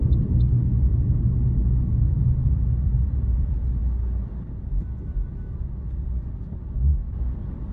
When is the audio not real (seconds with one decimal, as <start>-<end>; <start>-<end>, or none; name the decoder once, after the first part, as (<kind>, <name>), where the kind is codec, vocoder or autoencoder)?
1.6-3.8 (vocoder, Vocos)